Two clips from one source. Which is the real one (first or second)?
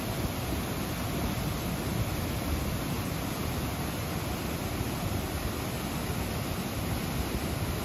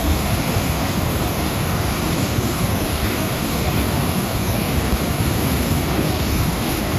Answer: first